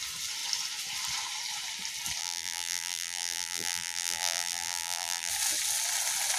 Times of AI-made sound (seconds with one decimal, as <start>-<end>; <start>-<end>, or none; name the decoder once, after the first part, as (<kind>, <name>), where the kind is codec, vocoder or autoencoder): 2.2-5.3 (vocoder, BigVGAN v2)